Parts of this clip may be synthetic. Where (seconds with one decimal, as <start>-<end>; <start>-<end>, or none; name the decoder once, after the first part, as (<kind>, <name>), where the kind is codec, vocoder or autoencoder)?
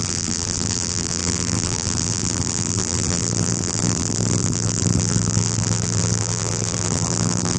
0.0-7.6 (vocoder, BigVGAN v2)